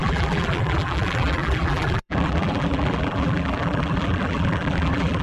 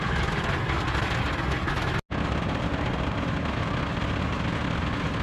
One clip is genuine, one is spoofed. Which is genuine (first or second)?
second